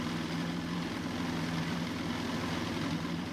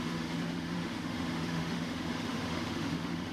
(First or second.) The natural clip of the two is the first